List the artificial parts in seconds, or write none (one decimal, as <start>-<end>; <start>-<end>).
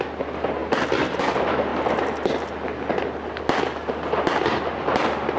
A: none